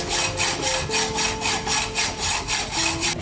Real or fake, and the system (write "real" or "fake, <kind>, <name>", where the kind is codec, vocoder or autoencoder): real